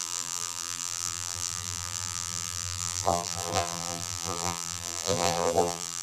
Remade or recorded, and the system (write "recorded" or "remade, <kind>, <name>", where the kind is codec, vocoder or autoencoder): remade, vocoder, BigVGAN v2